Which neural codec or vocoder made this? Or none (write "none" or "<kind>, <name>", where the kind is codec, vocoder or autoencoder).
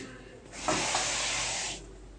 none